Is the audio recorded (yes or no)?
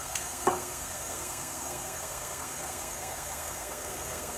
no